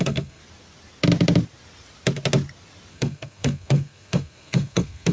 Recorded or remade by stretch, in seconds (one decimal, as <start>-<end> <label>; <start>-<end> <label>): 0.0-0.4 remade; 0.4-2.9 recorded; 2.9-5.1 remade